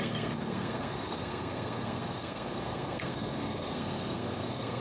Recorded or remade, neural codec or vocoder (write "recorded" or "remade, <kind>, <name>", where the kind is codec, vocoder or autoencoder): remade, codec, SNAC